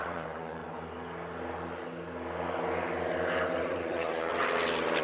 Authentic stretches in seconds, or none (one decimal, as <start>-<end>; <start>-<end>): 0.6-3.6; 4.3-5.0